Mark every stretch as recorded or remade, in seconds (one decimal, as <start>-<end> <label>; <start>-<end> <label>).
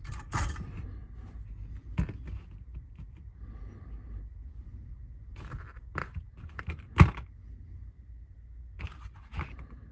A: 0.0-6.0 recorded; 6.0-6.8 remade; 6.8-9.9 recorded